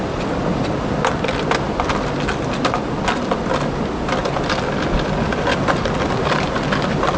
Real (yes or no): yes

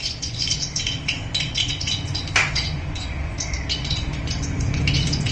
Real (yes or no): no